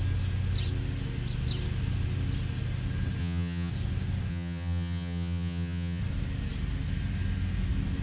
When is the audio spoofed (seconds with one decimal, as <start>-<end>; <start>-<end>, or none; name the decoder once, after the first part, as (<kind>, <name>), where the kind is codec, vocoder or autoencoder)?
3.2-3.7 (vocoder, HiFi-GAN); 4.3-6.0